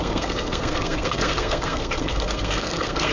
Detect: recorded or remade remade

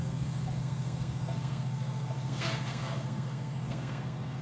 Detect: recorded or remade remade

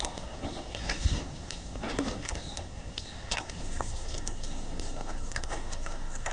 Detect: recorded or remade remade